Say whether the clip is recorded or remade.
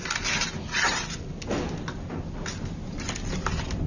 recorded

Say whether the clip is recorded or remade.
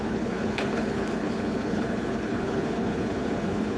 remade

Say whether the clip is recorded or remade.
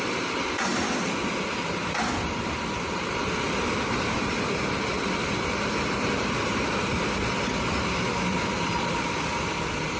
remade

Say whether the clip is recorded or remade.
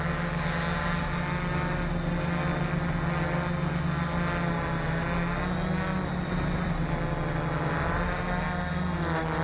recorded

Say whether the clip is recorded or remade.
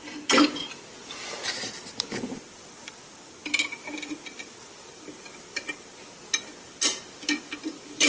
recorded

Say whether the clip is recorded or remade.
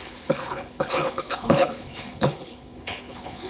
remade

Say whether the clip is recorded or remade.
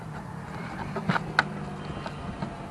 recorded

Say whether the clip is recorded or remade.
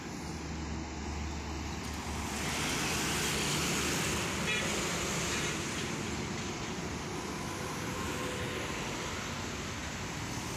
recorded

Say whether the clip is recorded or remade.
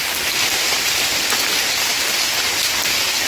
recorded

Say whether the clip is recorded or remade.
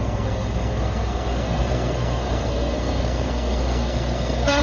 remade